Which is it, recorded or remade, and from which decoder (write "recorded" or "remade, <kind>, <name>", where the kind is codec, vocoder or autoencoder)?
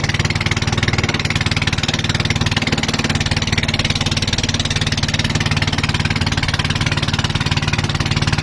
recorded